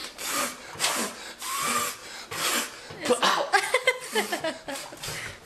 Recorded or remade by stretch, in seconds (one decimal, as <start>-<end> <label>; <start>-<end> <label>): 0.0-5.5 recorded